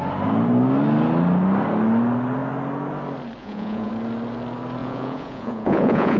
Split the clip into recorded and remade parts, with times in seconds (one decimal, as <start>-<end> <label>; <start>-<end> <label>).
0.0-3.4 recorded; 3.4-3.9 remade; 3.9-4.8 recorded; 4.8-6.2 remade